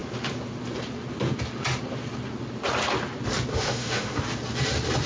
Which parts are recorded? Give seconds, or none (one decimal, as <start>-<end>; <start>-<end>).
0.0-3.5; 4.2-5.1